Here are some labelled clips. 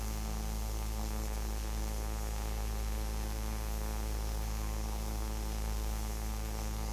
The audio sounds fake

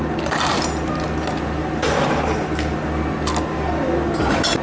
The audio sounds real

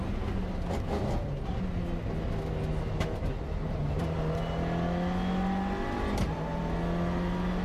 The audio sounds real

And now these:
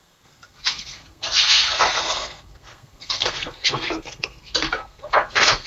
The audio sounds fake